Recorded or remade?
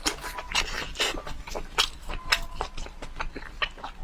recorded